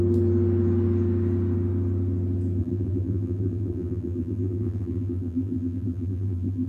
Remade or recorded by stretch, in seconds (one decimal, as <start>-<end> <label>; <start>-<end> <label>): 0.0-2.6 recorded; 2.6-6.7 remade